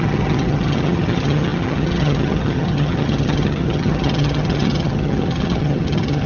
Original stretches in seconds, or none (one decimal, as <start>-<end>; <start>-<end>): none